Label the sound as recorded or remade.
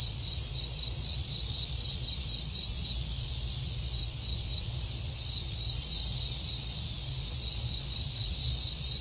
remade